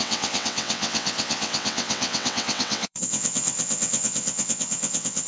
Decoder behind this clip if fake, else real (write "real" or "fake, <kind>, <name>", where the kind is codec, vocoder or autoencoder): fake, vocoder, WaveNeXt